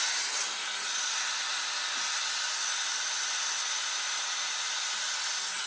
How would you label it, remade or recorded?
recorded